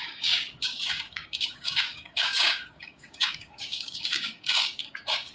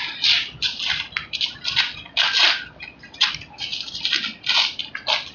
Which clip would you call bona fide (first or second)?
second